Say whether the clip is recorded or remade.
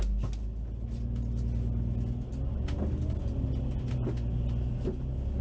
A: recorded